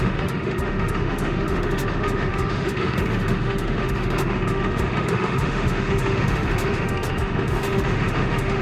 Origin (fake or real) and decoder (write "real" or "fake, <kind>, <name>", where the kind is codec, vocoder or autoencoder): fake, autoencoder, DAC-VAE